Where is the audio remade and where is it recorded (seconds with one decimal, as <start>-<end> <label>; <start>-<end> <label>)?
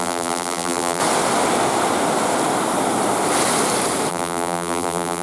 0.0-1.0 remade; 1.0-4.1 recorded; 4.1-5.2 remade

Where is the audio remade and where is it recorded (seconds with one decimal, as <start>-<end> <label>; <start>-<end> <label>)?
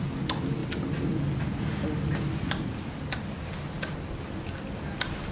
0.0-5.3 recorded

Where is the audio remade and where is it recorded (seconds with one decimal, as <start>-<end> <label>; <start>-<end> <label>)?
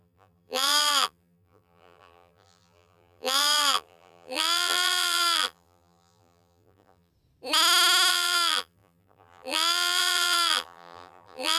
0.0-7.1 remade; 7.1-8.1 recorded; 8.1-11.6 remade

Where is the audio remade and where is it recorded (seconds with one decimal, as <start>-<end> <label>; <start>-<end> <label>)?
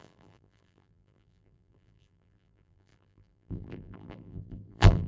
0.0-5.1 remade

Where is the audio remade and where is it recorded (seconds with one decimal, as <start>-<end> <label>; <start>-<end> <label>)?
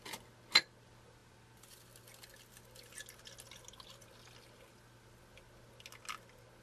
0.0-6.6 recorded